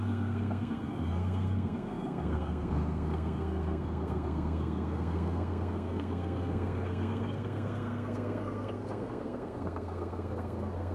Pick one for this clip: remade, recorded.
remade